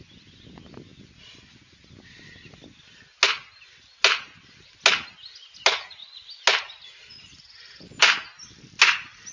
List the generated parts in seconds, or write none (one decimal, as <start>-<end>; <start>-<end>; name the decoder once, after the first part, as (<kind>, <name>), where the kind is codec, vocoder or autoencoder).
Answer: none